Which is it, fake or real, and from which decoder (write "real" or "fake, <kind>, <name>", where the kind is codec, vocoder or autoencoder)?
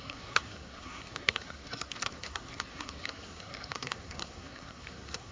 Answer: fake, codec, SNAC